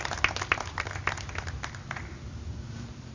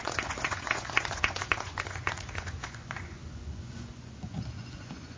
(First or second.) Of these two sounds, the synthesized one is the second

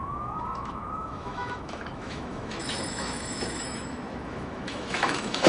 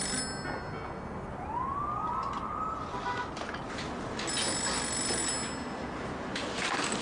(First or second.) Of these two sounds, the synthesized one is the first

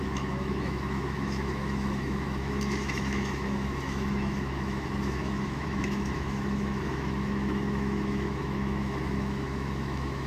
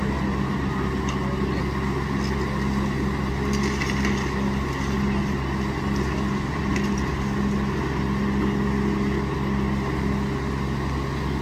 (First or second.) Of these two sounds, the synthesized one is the first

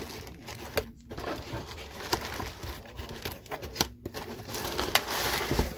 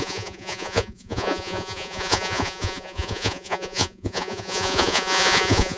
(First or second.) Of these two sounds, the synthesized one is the second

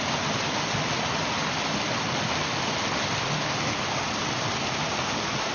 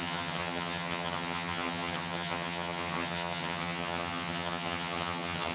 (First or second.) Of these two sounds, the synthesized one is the second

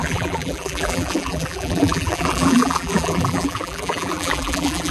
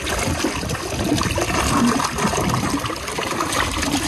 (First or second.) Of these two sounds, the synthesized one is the first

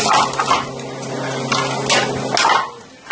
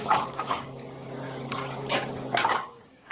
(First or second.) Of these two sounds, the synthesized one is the second